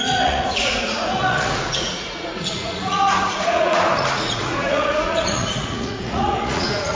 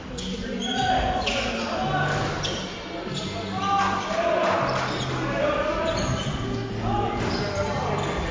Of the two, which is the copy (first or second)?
first